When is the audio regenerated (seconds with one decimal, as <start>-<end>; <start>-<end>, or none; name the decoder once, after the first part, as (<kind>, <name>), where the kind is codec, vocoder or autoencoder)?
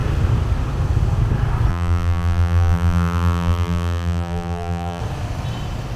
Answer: 1.7-5.0 (vocoder, BigVGAN v2)